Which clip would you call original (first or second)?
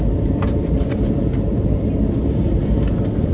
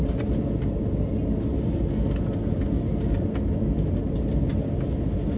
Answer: second